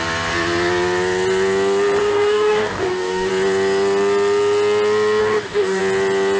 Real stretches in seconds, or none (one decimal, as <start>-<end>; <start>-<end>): 0.0-2.0; 3.3-5.2; 5.8-6.4